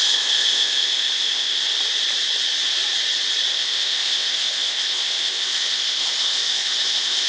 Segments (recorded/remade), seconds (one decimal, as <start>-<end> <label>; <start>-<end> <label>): 0.0-1.6 remade; 1.6-3.5 recorded; 3.5-7.3 remade